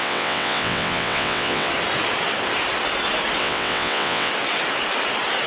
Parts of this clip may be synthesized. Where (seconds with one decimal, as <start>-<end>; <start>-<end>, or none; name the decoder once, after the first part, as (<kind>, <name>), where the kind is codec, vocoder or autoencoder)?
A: 0.0-1.7 (vocoder, WaveNeXt); 3.4-4.3